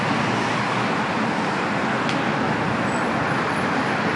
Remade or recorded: recorded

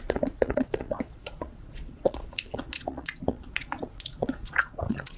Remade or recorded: remade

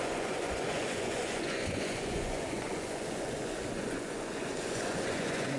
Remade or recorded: remade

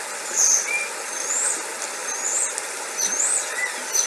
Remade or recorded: recorded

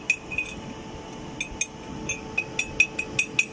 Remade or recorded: recorded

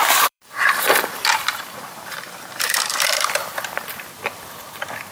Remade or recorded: remade